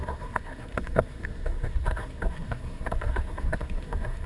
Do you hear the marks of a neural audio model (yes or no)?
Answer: yes